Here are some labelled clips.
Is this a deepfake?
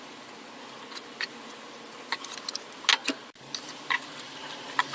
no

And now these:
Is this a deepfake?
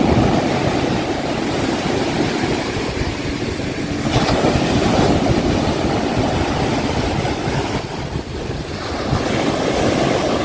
no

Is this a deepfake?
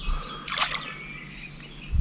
no